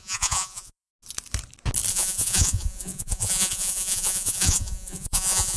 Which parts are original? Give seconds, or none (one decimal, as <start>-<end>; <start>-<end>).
0.9-1.9

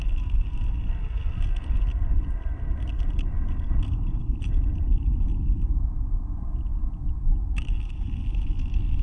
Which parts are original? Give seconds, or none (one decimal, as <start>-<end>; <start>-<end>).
0.0-9.0